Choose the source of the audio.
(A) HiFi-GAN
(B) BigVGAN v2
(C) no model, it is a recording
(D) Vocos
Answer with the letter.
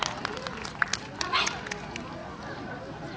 C